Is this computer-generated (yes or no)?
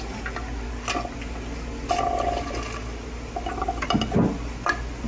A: no